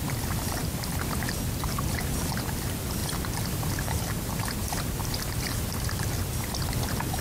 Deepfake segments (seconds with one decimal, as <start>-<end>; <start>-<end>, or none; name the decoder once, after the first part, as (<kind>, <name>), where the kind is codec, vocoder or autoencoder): none